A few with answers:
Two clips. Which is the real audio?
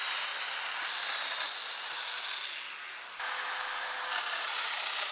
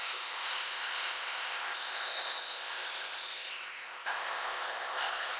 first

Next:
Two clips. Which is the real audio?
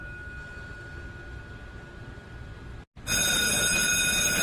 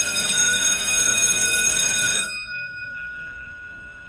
first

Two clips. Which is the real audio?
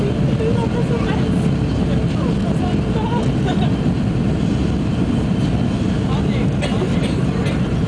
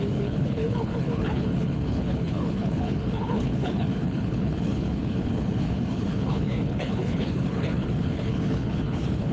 first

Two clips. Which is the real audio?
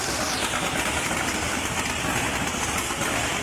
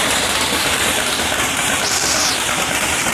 first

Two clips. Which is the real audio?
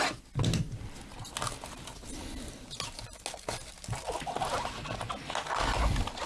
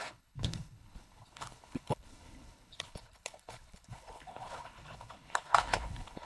first